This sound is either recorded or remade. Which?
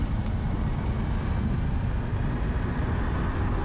recorded